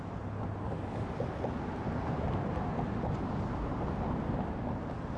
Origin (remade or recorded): recorded